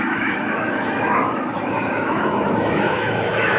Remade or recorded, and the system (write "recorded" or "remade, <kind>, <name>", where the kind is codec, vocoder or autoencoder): remade, autoencoder, DAC-VAE